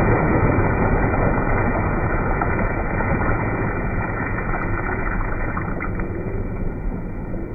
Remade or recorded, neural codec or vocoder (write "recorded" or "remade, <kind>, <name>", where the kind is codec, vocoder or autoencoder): remade, vocoder, Vocos